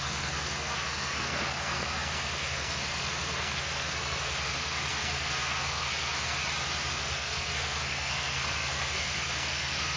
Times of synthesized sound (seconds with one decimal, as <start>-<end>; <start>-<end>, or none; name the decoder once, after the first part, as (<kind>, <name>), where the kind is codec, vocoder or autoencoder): 0.0-6.4 (codec, SNAC); 6.9-10.0